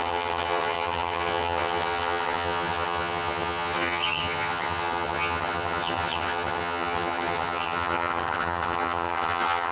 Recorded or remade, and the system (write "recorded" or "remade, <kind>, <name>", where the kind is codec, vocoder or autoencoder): remade, vocoder, HiFi-GAN